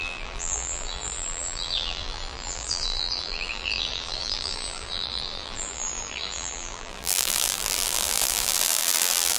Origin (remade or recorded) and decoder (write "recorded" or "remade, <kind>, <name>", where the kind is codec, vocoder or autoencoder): remade, vocoder, BigVGAN v2